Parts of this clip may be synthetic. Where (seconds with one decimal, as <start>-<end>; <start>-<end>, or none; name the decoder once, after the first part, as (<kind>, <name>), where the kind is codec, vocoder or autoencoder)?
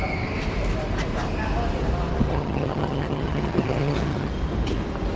2.3-4.3 (vocoder, HiFi-GAN)